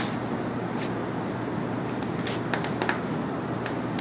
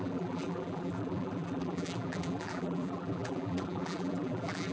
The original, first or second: first